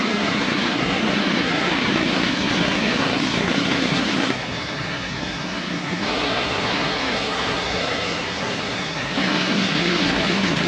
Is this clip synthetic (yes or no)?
yes